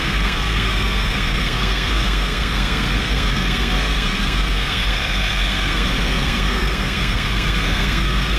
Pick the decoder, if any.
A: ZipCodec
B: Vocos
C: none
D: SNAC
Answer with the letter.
D